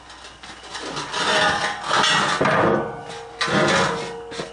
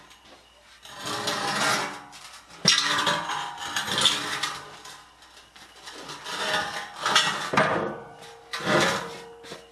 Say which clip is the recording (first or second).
first